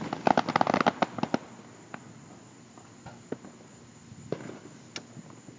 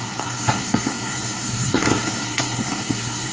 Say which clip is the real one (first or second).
first